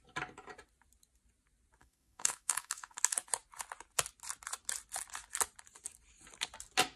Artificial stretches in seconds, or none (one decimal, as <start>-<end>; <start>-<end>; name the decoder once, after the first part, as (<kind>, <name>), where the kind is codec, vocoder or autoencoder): 1.8-3.0 (autoencoder, DAC-VAE)